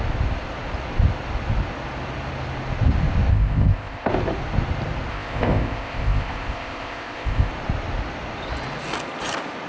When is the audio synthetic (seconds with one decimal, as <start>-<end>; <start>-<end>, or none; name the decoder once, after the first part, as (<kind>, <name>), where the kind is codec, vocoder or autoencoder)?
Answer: 3.3-4.1 (codec, ZipCodec); 5.1-7.5